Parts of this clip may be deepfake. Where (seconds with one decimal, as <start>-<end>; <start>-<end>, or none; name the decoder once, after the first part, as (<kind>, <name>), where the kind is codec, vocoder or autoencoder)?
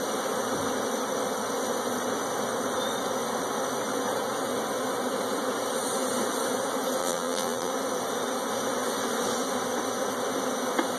7.0-7.7 (vocoder, BigVGAN v2)